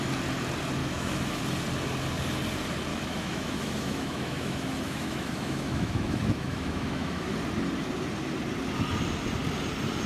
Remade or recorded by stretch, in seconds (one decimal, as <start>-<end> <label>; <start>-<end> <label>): 0.0-0.8 recorded; 0.8-1.4 remade; 1.4-2.9 recorded; 2.9-7.3 remade; 7.3-10.1 recorded